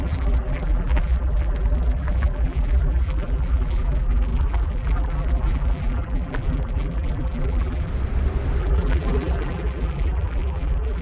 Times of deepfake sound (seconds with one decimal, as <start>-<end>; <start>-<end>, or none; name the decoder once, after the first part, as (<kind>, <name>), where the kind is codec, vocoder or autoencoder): 0.0-7.9 (vocoder, BigVGAN v2); 8.6-11.0